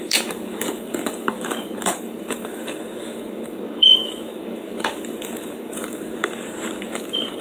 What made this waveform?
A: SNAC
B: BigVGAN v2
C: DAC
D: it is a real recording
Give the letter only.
C